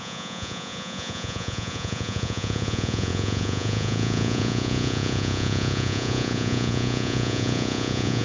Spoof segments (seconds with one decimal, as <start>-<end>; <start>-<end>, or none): 0.0-8.2